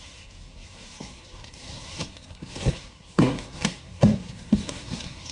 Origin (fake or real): fake